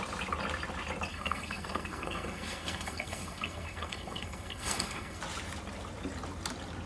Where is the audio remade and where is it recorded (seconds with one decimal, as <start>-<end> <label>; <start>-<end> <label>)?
0.0-1.1 recorded; 1.1-5.2 remade; 5.2-6.9 recorded